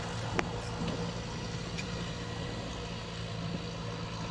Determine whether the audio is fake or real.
real